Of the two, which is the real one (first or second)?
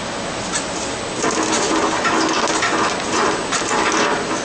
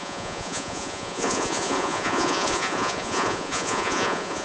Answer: first